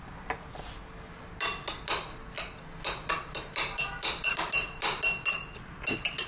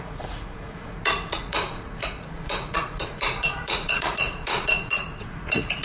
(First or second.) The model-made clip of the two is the second